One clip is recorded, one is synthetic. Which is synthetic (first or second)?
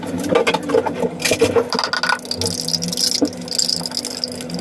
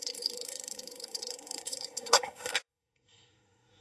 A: second